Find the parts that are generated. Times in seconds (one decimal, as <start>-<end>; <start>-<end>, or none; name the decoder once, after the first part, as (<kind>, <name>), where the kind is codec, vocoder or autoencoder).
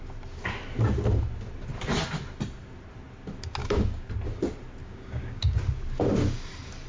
3.6-4.1 (codec, DAC); 4.8-5.6